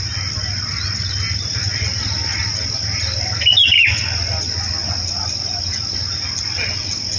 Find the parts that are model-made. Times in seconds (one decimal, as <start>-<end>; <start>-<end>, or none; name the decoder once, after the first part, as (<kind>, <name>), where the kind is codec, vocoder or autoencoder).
none